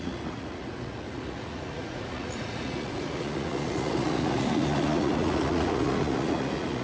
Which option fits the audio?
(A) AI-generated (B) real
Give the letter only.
A